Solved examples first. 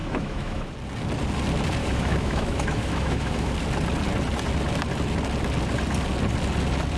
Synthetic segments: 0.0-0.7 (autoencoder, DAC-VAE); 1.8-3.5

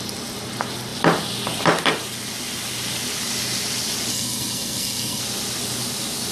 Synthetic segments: 4.1-5.2 (codec, SNAC)

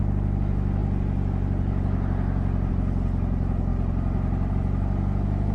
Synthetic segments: none

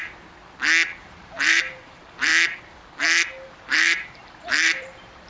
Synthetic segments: 1.0-2.3 (vocoder, BigVGAN v2); 3.5-5.3

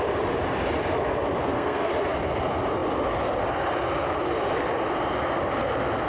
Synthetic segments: 1.4-1.9 (codec, SNAC)

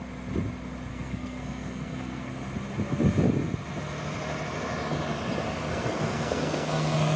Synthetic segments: 0.9-2.3 (codec, SNAC); 5.7-7.2